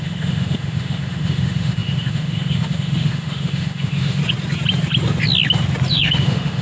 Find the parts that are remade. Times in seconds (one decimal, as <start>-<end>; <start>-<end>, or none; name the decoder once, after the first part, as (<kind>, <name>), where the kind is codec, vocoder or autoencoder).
0.0-4.2 (autoencoder, DAC-VAE); 5.9-6.6